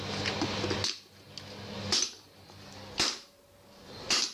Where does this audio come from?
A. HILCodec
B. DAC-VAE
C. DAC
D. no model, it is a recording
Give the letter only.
D